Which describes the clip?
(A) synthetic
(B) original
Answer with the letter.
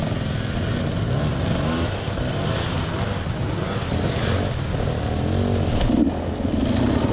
B